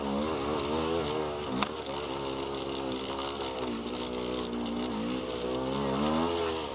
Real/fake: real